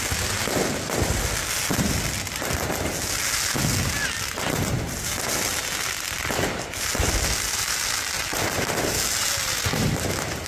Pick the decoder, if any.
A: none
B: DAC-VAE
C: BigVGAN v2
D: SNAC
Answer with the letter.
A